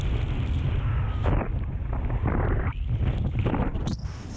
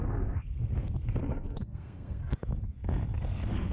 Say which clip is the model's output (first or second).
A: second